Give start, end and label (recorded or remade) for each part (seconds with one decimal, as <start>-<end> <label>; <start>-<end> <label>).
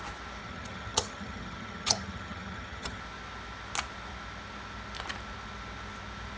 0.0-0.4 recorded; 0.4-3.0 remade; 3.0-6.4 recorded